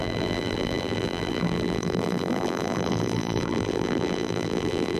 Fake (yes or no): yes